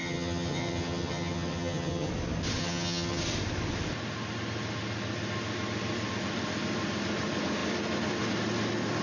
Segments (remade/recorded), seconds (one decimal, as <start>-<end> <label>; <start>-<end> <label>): 0.0-2.1 remade; 2.1-2.6 recorded; 2.6-3.2 remade; 3.2-9.0 recorded